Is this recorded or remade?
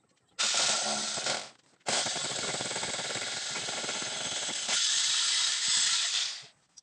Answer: recorded